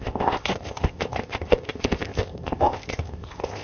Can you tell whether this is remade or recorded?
remade